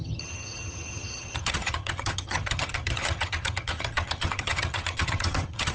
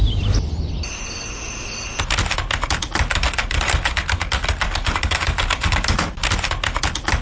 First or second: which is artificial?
first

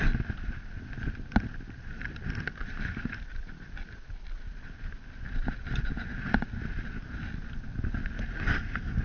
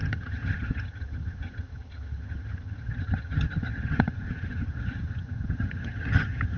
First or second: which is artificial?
second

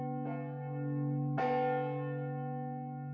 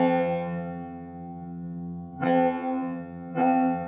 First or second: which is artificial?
second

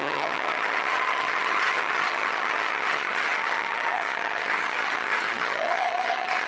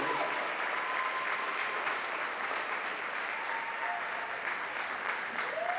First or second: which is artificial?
first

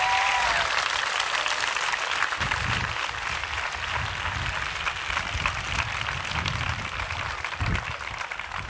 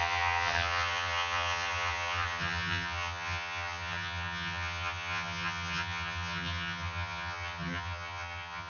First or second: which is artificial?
second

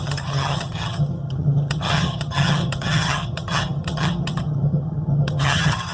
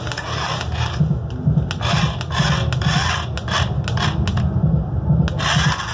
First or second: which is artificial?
first